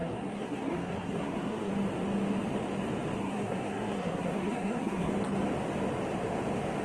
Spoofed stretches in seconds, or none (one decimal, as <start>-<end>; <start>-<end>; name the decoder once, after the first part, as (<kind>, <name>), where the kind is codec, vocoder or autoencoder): 0.0-1.7 (codec, SNAC); 3.2-5.1